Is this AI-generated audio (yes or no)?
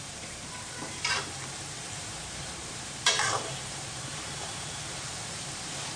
yes